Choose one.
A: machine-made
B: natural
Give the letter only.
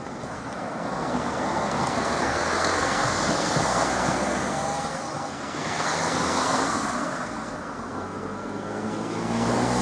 A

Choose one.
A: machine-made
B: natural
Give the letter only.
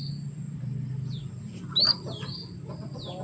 B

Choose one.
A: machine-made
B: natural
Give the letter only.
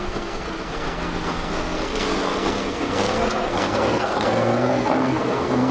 A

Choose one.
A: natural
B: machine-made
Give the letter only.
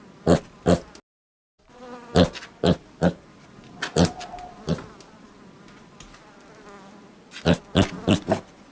A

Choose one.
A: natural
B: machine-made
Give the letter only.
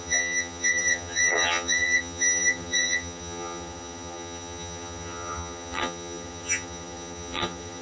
B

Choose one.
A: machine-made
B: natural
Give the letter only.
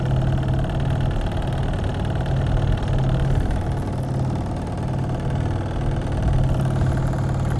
B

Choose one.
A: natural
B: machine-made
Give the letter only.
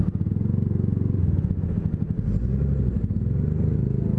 A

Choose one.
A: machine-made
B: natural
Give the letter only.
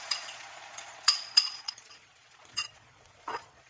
A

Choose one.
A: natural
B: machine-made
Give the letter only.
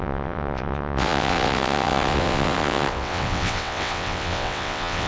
B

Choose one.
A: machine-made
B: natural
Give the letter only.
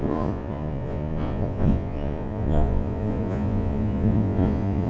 A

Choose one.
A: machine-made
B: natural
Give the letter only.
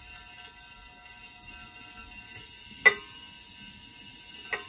B